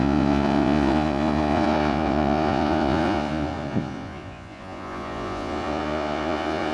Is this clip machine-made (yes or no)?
yes